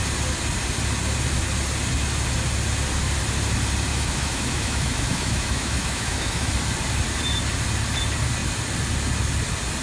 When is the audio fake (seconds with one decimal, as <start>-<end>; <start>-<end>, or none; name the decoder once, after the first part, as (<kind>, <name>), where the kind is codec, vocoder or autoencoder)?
3.9-6.5 (autoencoder, DAC-VAE)